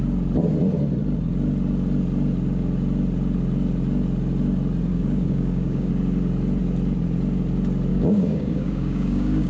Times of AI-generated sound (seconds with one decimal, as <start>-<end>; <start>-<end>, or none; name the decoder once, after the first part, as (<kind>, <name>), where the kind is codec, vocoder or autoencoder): 4.9-5.9 (codec, DAC); 7.9-9.5